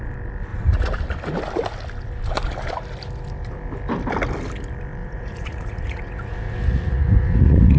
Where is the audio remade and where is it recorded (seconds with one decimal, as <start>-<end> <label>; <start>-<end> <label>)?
0.0-0.5 recorded; 0.5-1.0 remade; 1.0-5.0 recorded; 5.0-7.8 remade